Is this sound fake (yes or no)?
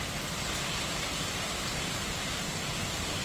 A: no